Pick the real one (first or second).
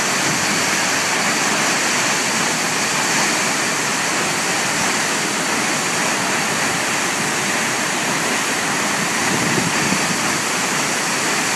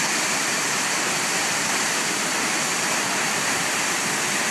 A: first